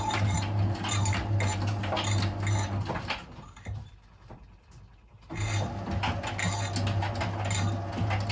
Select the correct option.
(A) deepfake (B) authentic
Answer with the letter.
B